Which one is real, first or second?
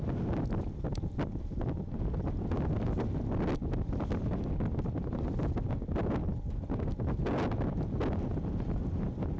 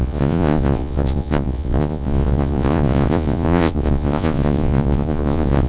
first